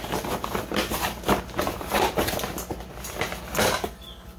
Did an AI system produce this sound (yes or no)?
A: no